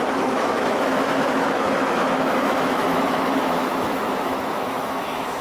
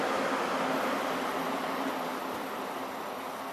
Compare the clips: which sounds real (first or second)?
second